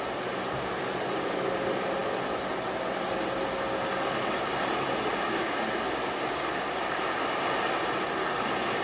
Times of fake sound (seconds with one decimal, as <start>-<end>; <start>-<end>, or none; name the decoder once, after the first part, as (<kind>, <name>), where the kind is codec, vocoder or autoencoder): 5.1-5.6 (codec, DAC)